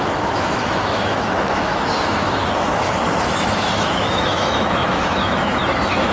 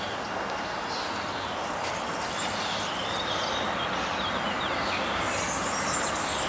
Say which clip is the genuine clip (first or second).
second